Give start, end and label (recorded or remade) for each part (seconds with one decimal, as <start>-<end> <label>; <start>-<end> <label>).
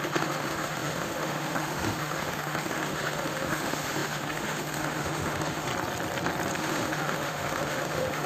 0.0-5.7 remade; 5.7-6.6 recorded; 6.6-8.3 remade